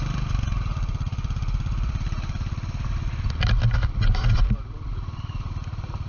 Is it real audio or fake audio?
fake